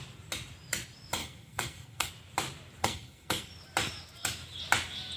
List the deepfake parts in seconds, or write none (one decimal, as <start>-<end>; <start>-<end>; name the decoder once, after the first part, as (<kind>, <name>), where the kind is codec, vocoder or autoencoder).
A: 1.2-2.1 (codec, SNAC); 2.8-3.5